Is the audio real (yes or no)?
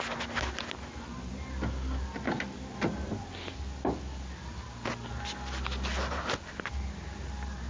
yes